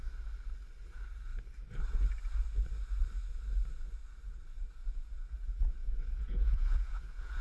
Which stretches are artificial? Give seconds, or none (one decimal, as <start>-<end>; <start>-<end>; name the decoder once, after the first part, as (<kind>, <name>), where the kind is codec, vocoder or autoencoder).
4.8-7.4 (vocoder, Vocos)